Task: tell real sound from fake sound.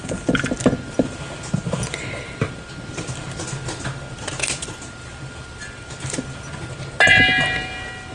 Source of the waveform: real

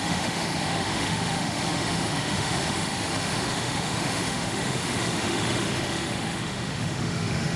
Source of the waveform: fake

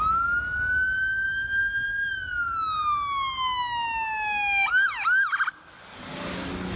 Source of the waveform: real